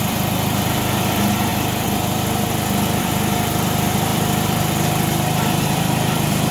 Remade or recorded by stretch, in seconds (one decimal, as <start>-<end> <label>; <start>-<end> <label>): 0.0-6.5 remade